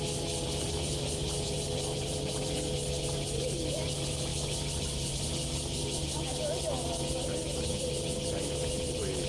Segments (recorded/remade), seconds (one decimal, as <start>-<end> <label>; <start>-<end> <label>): 0.0-4.3 remade; 4.3-4.8 recorded; 4.8-9.3 remade